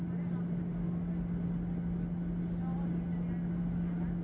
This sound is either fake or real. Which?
real